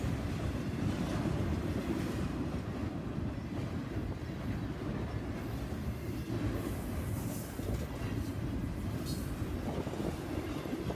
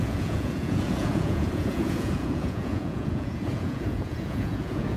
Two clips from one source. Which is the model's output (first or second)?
second